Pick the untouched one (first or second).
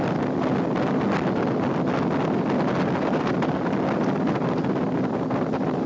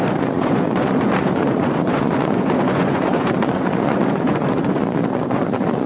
first